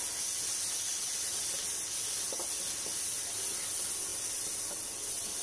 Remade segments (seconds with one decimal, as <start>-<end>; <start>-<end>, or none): 0.9-1.4; 4.1-5.4